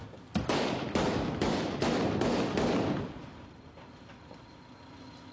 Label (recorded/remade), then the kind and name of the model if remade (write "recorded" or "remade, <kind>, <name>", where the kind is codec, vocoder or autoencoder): recorded